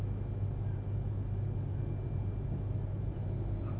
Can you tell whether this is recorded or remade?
recorded